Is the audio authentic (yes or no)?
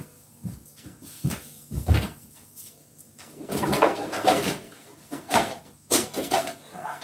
no